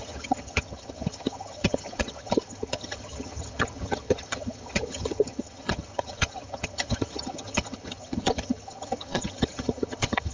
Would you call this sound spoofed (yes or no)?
yes